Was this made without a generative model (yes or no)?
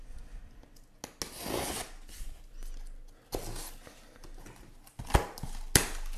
yes